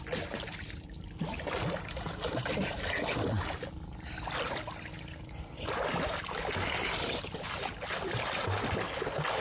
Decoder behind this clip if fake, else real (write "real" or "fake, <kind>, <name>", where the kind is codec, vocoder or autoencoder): real